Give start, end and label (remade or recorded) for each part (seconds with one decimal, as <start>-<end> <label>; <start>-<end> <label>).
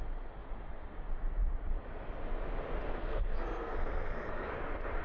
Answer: 0.0-3.0 recorded; 3.0-4.6 remade; 4.6-5.0 recorded